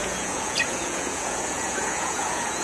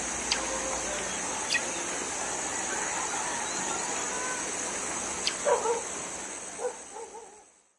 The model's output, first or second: first